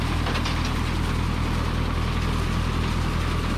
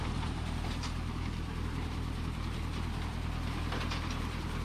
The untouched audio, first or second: first